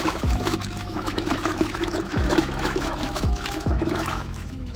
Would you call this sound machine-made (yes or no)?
yes